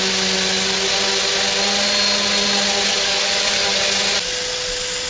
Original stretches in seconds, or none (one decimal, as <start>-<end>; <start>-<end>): 0.0-2.9; 3.7-5.1